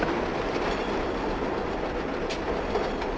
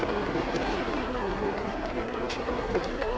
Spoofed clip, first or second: second